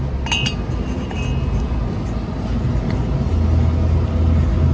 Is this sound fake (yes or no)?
no